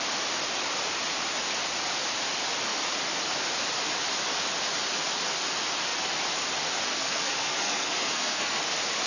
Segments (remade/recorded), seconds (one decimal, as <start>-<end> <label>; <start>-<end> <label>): 0.0-6.9 recorded; 6.9-8.6 remade; 8.6-9.1 recorded